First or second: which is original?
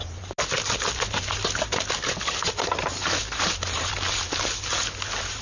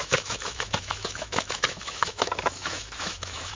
first